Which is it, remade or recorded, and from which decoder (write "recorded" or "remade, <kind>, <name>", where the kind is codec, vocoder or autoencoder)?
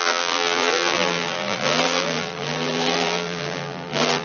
remade, vocoder, BigVGAN v2